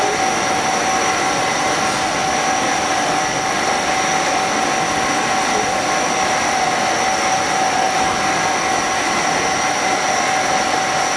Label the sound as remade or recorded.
recorded